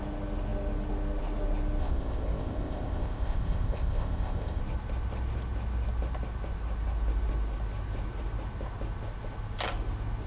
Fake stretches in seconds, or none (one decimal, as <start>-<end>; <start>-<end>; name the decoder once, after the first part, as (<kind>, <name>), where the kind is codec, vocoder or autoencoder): 1.8-4.6 (codec, ZipCodec)